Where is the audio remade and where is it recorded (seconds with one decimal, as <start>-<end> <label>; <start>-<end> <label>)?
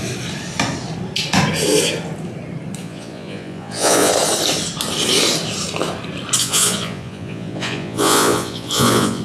0.0-2.8 recorded; 2.8-4.1 remade; 4.1-6.4 recorded; 6.4-9.2 remade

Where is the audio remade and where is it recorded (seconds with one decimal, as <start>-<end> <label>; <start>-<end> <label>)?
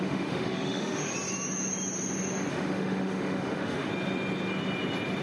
0.0-1.1 remade; 1.1-2.5 recorded; 2.5-3.9 remade; 3.9-5.2 recorded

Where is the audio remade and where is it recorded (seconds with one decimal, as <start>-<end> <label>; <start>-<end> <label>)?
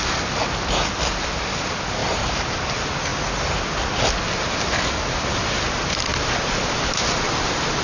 0.0-2.0 recorded; 2.0-2.7 remade; 2.7-6.1 recorded; 6.1-7.8 remade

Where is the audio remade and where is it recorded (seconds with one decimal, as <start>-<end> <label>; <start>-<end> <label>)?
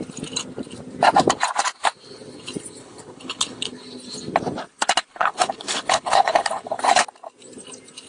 0.0-2.8 recorded; 2.8-3.7 remade; 3.7-5.1 recorded; 5.1-6.8 remade; 6.8-8.1 recorded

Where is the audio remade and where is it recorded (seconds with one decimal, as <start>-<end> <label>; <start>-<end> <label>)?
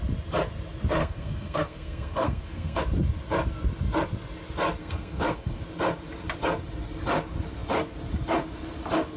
0.0-1.0 recorded; 1.0-2.8 remade; 2.8-4.8 recorded; 4.8-5.6 remade; 5.6-9.2 recorded